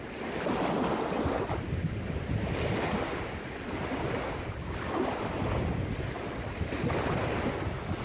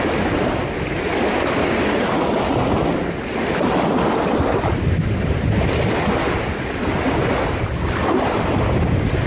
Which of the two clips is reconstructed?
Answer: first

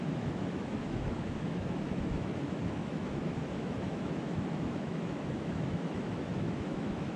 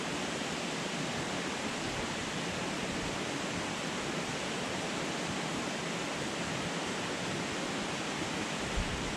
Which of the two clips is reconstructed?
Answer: first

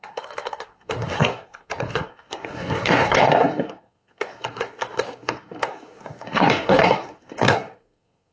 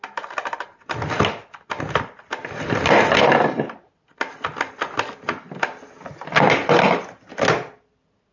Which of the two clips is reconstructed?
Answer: first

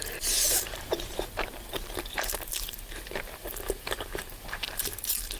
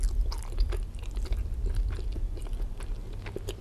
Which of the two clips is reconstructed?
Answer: first